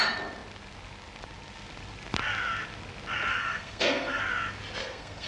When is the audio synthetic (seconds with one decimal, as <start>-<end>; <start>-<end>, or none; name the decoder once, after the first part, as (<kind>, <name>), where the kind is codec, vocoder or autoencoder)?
3.3-4.2 (codec, SNAC); 4.8-5.3